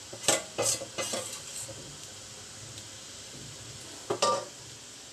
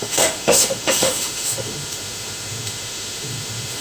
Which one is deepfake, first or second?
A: second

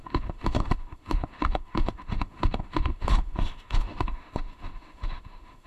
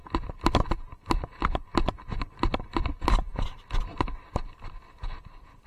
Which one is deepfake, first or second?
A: first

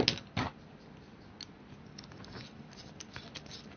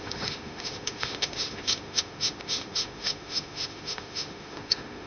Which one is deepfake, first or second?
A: second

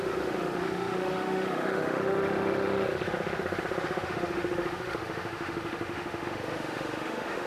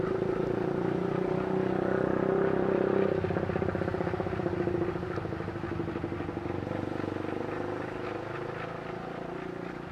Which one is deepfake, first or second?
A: first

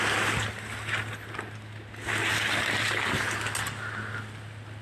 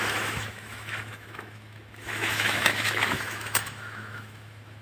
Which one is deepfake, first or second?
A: second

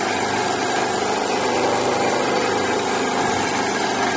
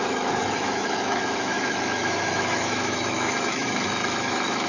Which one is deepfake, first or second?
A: second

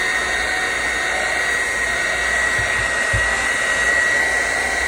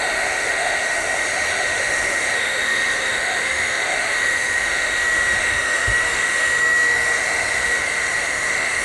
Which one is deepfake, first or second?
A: second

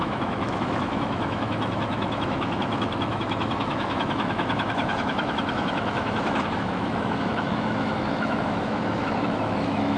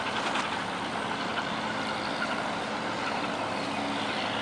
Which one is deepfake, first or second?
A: first